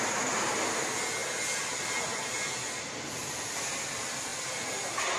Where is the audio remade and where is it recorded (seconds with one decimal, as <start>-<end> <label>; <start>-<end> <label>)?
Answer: 0.0-1.2 recorded; 1.2-3.5 remade; 3.5-4.3 recorded; 4.3-5.2 remade